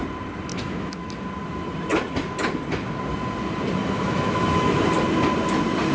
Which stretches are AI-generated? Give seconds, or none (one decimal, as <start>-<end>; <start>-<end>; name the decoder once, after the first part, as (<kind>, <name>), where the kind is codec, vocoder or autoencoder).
0.5-1.1 (autoencoder, DAC-VAE); 3.8-4.8